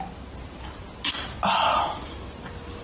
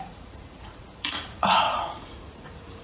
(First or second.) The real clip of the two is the first